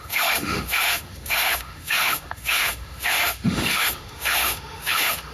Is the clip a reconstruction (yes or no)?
yes